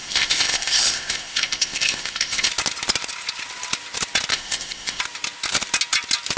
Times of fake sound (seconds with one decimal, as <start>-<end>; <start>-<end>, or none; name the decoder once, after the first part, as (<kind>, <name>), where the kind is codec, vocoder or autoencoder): 0.0-2.5 (codec, ZipCodec); 4.3-5.0